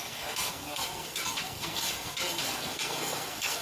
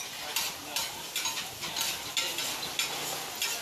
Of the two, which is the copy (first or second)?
first